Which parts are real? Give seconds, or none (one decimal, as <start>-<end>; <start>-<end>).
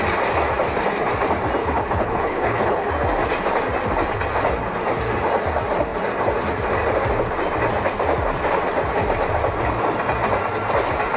0.0-1.6; 2.9-11.2